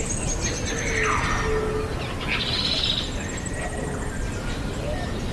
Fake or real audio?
real